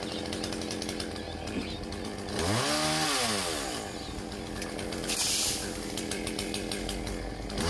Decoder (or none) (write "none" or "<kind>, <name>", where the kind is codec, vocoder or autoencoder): none